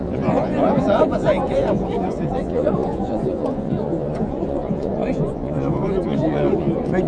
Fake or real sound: fake